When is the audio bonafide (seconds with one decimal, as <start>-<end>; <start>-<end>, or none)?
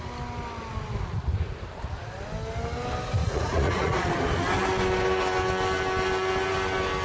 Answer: 0.0-3.2; 4.1-7.0